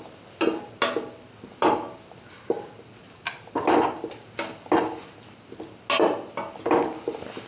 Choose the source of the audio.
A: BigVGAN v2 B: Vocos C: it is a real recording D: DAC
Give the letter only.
C